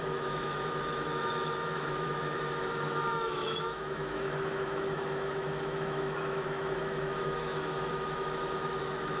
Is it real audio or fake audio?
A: fake